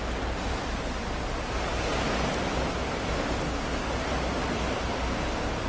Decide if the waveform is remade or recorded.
recorded